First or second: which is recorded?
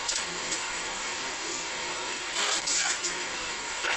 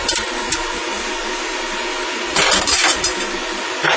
second